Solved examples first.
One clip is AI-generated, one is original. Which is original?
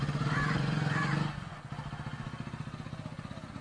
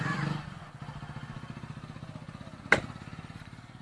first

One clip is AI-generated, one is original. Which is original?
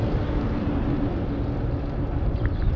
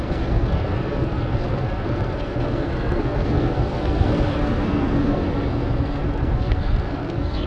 first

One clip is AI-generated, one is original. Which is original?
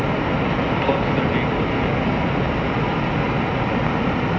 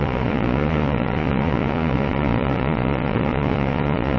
first